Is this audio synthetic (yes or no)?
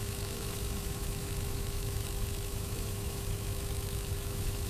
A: yes